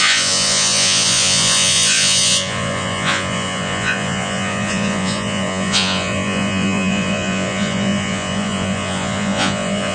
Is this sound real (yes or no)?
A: no